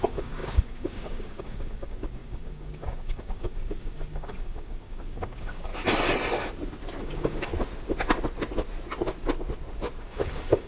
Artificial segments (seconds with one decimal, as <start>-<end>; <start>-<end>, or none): 0.0-5.7; 7.0-7.5; 10.0-10.7